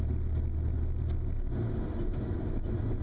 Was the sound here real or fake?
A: real